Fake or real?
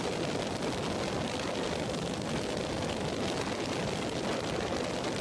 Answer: real